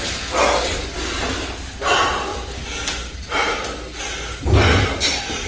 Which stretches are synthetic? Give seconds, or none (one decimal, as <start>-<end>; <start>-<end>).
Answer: 2.3-4.0